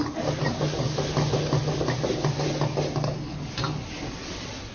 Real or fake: real